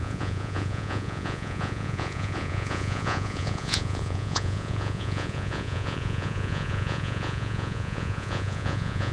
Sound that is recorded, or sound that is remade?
remade